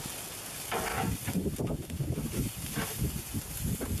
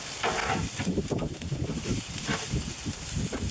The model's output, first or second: second